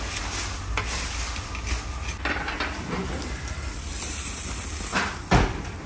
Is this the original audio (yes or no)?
yes